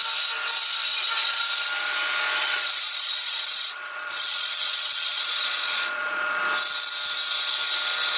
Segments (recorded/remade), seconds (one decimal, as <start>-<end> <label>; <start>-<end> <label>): 0.0-0.9 recorded; 0.9-1.4 remade; 1.4-2.4 recorded; 2.4-6.4 remade; 6.4-8.2 recorded